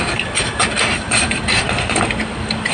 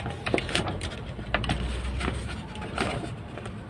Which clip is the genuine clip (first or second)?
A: second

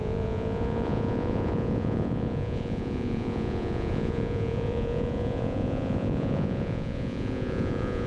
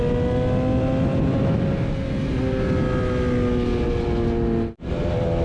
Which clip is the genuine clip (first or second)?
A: second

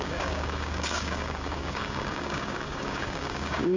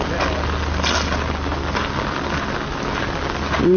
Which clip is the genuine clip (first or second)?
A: second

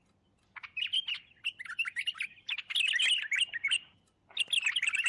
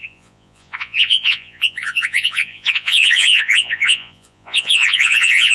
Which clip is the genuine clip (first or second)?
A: first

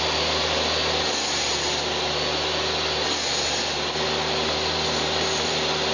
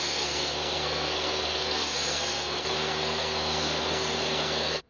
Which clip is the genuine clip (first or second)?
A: first